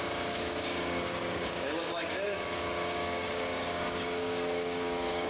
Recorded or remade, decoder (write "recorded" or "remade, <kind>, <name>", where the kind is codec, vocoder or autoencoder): remade, codec, DAC